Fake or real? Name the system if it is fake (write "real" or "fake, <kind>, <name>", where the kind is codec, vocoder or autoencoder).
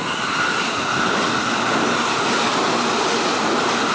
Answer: real